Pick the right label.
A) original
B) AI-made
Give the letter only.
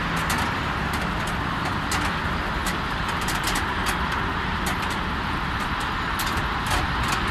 A